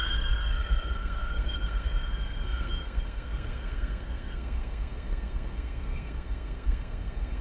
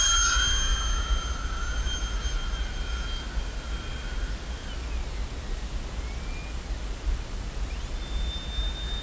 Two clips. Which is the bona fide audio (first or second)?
second